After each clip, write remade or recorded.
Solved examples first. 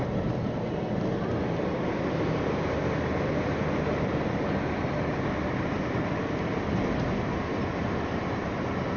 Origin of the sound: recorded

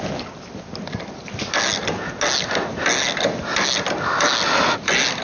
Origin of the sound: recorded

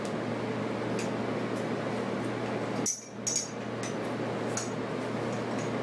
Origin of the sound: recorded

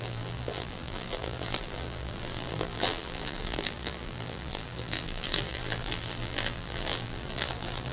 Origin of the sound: remade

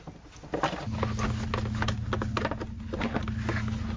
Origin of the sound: recorded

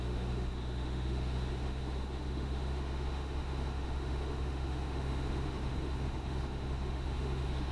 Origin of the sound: remade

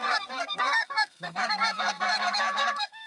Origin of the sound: remade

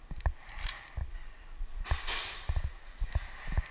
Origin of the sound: recorded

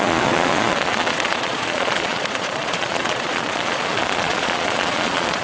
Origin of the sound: remade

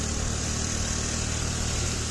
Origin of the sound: remade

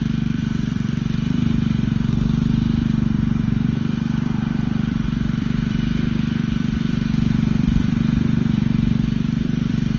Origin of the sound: remade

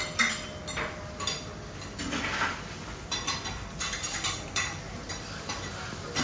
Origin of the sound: recorded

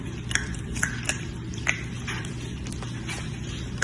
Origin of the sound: remade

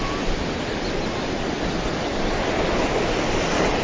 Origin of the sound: recorded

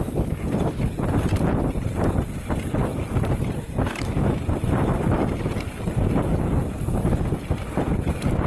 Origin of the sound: recorded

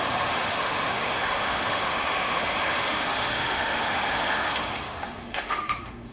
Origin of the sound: remade